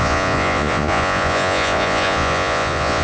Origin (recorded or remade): remade